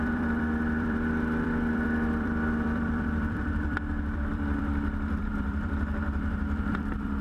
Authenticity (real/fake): fake